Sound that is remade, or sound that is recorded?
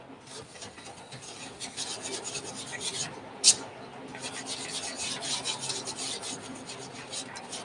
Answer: recorded